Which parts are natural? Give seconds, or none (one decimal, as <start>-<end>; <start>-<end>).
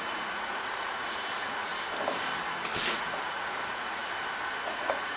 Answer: 1.7-2.9; 4.0-4.7